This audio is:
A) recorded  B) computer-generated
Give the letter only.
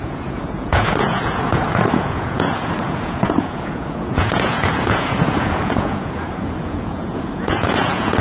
B